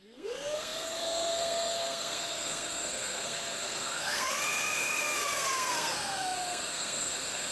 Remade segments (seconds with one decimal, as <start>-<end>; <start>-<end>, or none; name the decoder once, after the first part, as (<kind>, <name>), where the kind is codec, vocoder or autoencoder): 0.0-7.5 (codec, SNAC)